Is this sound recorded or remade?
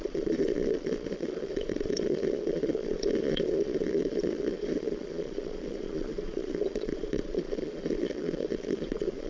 remade